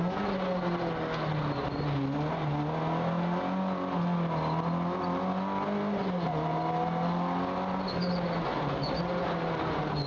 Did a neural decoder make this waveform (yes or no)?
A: no